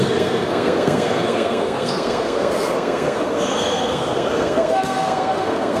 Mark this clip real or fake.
fake